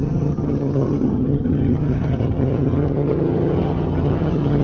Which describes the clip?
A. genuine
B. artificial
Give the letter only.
B